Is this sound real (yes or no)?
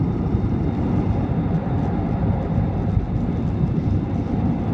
yes